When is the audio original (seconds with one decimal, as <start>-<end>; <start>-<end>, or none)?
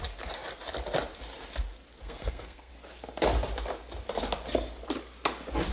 0.0-2.0; 2.7-5.7